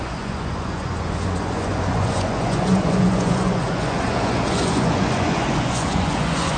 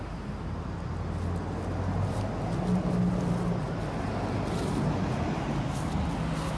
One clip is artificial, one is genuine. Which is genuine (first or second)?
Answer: second